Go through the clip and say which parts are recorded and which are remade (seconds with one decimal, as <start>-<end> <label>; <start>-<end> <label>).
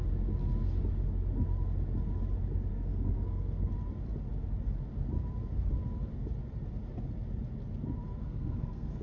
0.0-2.7 recorded; 2.7-3.7 remade; 3.7-8.2 recorded; 8.2-9.0 remade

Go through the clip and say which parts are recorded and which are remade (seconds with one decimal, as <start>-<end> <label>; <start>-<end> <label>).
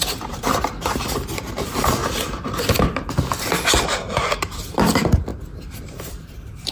0.0-2.0 remade; 2.0-4.8 recorded; 4.8-5.3 remade; 5.3-6.1 recorded; 6.1-6.7 remade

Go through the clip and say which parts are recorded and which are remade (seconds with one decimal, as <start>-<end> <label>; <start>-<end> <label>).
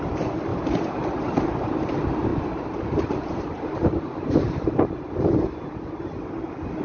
0.0-0.5 recorded; 0.5-1.7 remade; 1.7-2.3 recorded; 2.3-3.7 remade; 3.7-6.8 recorded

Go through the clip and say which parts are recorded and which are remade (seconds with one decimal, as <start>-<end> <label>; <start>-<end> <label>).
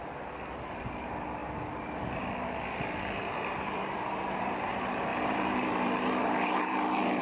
0.0-5.1 recorded; 5.1-7.2 remade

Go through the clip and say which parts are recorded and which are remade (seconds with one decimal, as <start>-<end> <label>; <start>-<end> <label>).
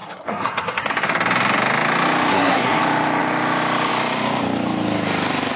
0.0-0.9 remade; 0.9-2.3 recorded; 2.3-2.8 remade; 2.8-5.6 recorded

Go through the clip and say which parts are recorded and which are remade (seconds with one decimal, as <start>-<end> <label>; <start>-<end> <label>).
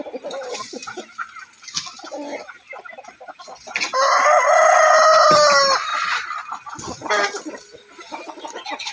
0.0-8.9 recorded